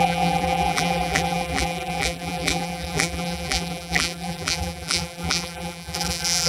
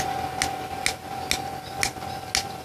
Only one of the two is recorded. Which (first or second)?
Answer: second